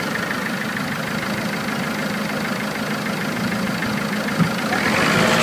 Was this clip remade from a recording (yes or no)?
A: no